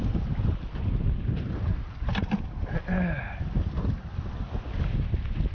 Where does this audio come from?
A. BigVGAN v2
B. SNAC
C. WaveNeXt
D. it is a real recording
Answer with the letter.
D